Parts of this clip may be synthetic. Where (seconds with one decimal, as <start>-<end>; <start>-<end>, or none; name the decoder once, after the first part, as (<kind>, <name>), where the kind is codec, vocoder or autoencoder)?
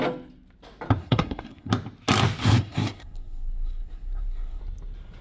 1.0-1.7 (codec, SNAC); 2.4-4.6